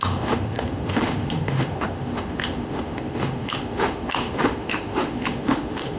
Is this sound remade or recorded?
remade